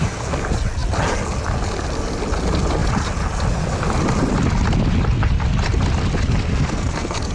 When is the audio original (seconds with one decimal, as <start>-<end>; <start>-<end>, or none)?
0.0-6.5